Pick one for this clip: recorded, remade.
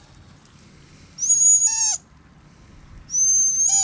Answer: recorded